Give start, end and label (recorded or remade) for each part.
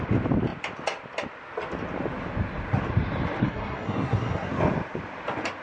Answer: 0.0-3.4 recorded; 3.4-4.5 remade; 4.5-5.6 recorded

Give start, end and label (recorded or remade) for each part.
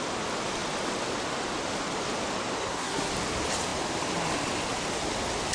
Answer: 0.0-2.6 recorded; 2.6-3.1 remade; 3.1-5.5 recorded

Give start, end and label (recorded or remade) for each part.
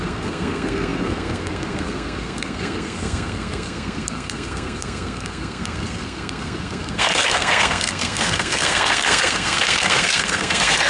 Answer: 0.0-10.9 remade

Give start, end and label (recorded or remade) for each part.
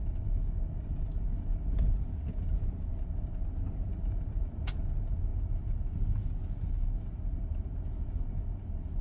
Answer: 0.0-9.0 recorded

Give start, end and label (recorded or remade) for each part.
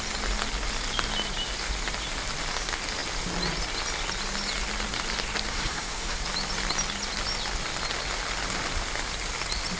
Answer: 0.0-5.5 recorded; 5.5-6.2 remade; 6.2-9.8 recorded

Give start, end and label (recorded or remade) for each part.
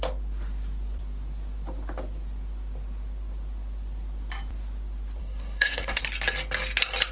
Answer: 0.0-5.2 recorded; 5.2-6.0 remade; 6.0-7.1 recorded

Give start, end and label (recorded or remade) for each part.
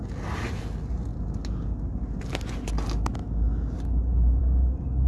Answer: 0.0-5.1 recorded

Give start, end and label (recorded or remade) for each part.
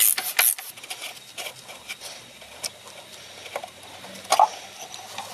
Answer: 0.0-5.3 recorded